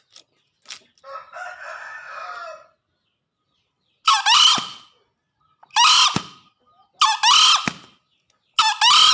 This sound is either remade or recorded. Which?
recorded